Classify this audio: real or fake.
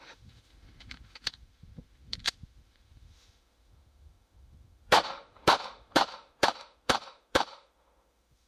fake